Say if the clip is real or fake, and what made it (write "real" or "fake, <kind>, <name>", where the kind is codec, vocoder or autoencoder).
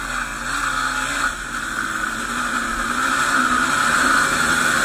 real